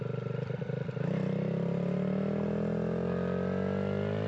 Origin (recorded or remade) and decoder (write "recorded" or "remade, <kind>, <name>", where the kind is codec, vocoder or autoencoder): recorded